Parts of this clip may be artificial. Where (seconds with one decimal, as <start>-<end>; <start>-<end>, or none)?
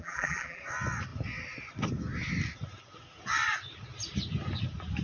0.0-0.6